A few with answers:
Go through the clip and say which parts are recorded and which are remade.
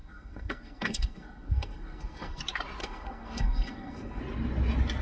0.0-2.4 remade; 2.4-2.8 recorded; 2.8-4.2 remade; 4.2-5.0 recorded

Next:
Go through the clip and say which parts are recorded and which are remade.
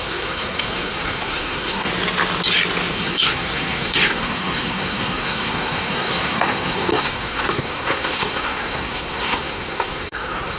0.0-1.9 remade; 1.9-2.9 recorded; 2.9-10.6 remade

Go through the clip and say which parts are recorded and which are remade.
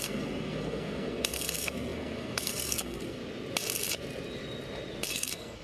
0.0-3.2 remade; 3.2-5.1 recorded; 5.1-5.6 remade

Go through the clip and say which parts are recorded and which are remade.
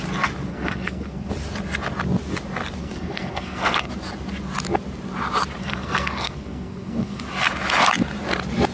0.0-0.5 recorded; 0.5-1.3 remade; 1.3-2.8 recorded; 2.8-3.9 remade; 3.9-5.6 recorded; 5.6-7.2 remade; 7.2-8.7 recorded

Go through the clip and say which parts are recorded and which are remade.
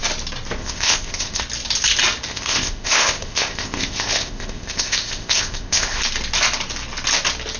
0.0-0.6 recorded; 0.6-1.4 remade; 1.4-2.3 recorded; 2.3-6.0 remade; 6.0-7.6 recorded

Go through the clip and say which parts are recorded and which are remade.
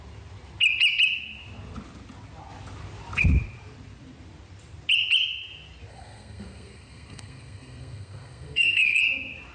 0.0-5.9 recorded; 5.9-9.0 remade; 9.0-9.5 recorded